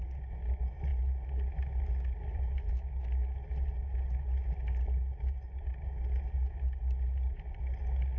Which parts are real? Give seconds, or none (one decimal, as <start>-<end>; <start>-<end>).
0.0-8.2